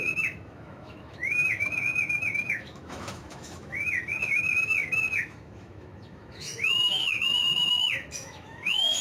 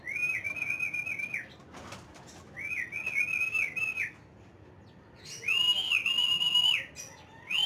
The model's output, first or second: first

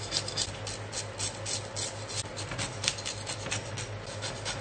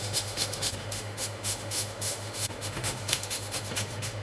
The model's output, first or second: second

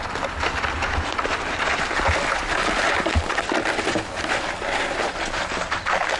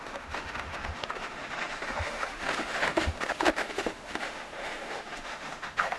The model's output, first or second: second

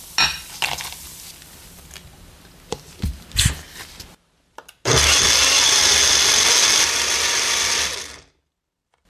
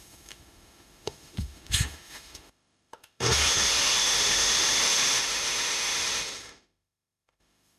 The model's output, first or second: second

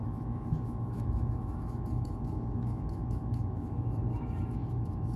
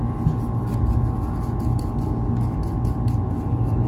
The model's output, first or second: first